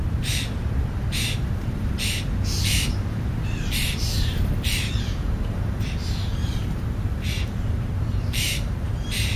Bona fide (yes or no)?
no